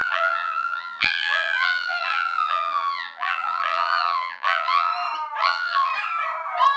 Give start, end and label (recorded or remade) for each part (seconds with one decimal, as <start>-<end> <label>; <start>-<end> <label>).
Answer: 0.0-4.9 remade; 4.9-5.4 recorded; 5.4-5.9 remade; 5.9-6.8 recorded